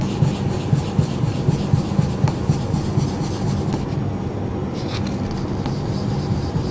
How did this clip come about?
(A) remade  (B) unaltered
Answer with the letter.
B